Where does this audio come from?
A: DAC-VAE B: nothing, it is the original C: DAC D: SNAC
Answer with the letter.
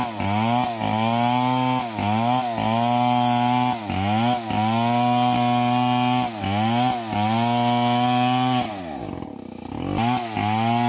B